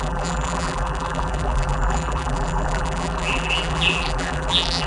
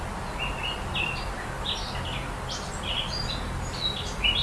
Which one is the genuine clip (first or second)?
second